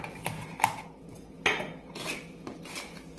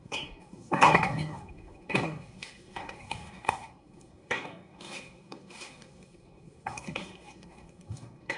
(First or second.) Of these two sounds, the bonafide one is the first